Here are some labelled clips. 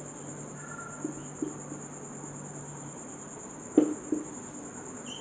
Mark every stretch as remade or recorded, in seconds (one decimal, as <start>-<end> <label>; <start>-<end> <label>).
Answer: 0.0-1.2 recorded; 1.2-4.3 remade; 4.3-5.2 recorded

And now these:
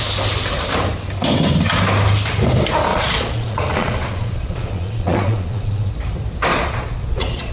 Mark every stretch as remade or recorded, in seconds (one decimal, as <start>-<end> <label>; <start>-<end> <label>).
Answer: 0.0-2.9 recorded; 2.9-5.9 remade; 5.9-6.5 recorded; 6.5-7.5 remade

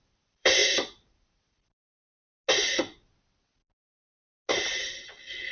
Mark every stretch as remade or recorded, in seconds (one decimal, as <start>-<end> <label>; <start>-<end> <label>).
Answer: 0.0-2.1 remade; 2.1-5.5 recorded

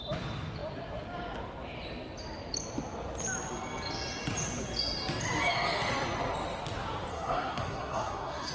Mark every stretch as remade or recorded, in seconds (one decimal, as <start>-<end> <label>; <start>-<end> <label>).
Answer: 0.0-7.1 recorded; 7.1-8.5 remade

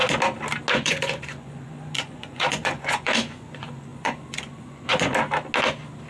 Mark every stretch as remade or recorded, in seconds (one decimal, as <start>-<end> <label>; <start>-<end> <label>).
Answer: 0.0-0.7 recorded; 0.7-5.1 remade; 5.1-6.1 recorded

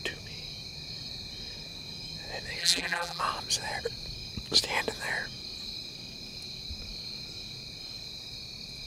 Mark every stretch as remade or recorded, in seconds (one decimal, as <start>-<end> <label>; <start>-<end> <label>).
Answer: 0.0-2.6 recorded; 2.6-3.2 remade; 3.2-8.9 recorded